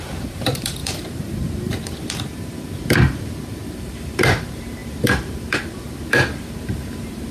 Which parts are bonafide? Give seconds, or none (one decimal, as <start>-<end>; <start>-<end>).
none